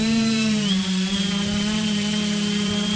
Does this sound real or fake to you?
fake